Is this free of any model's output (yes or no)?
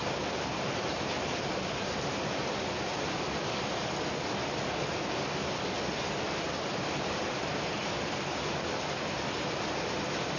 yes